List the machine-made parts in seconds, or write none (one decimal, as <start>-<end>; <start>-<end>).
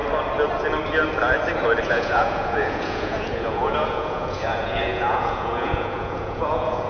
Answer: 1.8-6.9